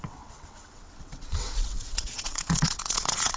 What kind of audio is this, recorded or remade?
remade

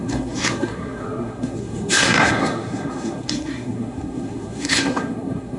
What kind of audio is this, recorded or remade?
remade